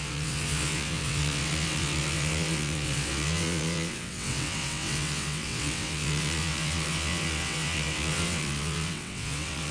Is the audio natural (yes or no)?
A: no